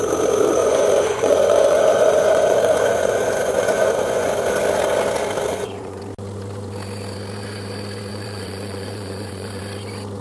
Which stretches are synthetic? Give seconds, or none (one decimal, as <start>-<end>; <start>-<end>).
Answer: 0.6-4.3; 5.5-6.0; 8.1-9.6